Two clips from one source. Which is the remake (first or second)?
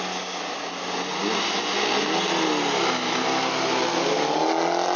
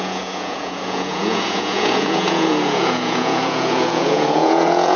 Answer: second